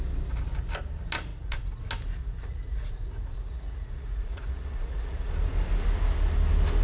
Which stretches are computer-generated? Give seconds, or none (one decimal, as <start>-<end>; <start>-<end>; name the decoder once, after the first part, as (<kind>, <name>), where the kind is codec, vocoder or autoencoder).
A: 1.3-1.8 (vocoder, Vocos); 2.2-5.3